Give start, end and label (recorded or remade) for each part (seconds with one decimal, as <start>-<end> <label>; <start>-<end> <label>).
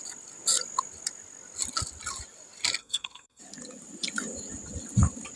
0.0-2.8 recorded; 2.8-3.4 remade; 3.4-5.4 recorded